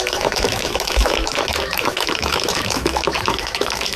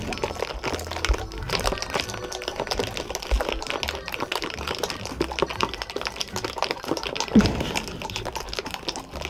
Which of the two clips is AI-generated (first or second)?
first